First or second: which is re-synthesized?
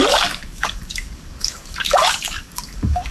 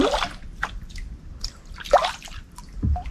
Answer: first